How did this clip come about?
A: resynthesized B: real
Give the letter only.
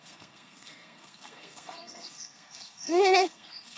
A